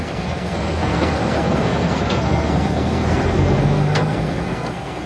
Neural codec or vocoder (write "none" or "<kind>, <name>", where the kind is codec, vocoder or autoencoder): codec, SNAC